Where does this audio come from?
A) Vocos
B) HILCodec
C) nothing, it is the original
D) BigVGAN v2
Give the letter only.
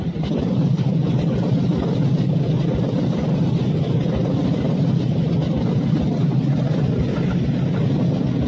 C